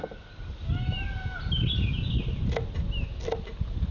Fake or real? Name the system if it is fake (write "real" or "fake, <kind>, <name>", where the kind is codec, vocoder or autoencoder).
real